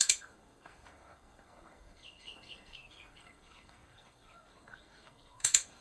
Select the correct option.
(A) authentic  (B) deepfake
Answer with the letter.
B